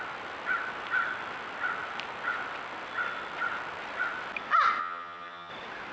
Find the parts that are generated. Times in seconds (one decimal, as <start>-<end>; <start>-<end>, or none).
4.8-5.5